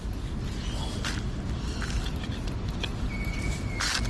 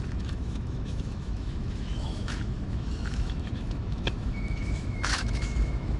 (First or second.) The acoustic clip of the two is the first